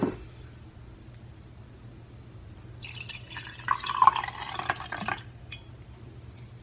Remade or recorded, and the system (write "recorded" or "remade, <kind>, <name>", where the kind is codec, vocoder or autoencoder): recorded